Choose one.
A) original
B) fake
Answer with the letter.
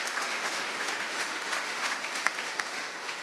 B